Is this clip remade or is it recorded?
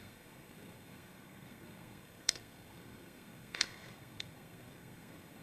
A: remade